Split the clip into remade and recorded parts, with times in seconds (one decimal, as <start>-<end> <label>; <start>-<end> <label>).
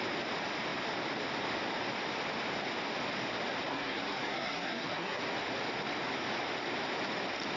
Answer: 0.0-3.7 recorded; 3.7-5.2 remade; 5.2-7.6 recorded